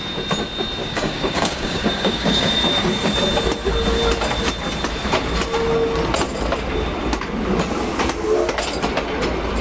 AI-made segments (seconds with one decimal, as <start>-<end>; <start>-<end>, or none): 0.8-2.5